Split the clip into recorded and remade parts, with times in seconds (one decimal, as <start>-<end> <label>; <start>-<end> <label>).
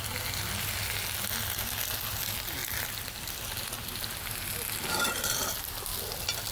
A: 0.0-6.5 recorded